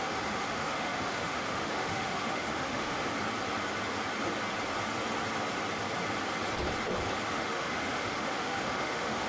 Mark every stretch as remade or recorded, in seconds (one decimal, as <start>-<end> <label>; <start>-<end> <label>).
0.0-3.1 remade; 3.1-7.3 recorded; 7.3-9.3 remade